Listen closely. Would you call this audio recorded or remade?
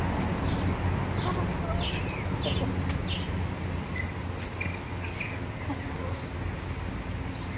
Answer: recorded